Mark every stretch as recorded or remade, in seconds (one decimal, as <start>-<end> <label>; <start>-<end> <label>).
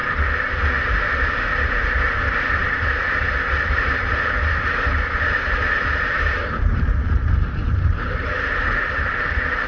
0.0-9.7 remade